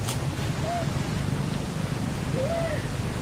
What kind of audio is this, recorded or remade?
remade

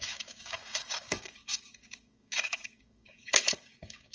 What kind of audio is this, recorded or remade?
remade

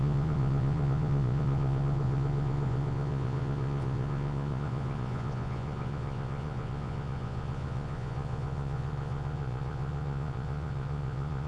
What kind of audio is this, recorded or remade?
remade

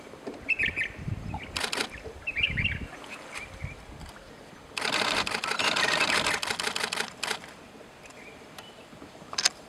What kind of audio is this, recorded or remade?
remade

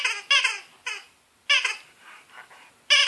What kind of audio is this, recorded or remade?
recorded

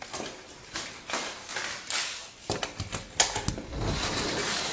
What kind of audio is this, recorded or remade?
recorded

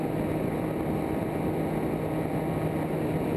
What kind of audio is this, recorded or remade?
recorded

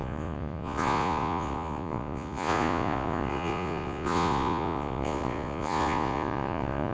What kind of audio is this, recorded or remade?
remade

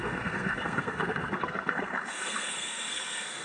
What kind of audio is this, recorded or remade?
remade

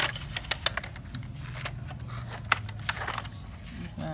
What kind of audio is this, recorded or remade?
recorded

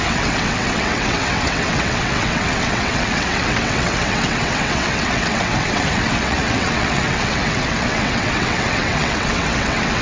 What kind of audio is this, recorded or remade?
remade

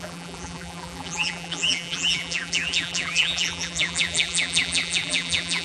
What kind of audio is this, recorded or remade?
remade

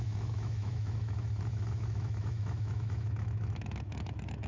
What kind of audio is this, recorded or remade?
remade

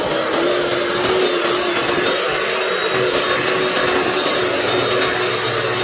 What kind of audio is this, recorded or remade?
recorded